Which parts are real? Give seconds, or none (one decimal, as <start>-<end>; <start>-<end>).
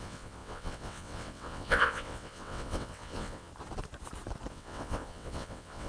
3.5-4.5